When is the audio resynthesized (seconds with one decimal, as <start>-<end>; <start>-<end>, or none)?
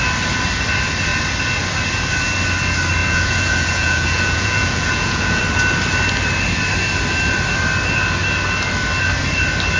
3.0-5.4